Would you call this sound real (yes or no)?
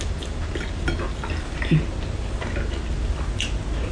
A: yes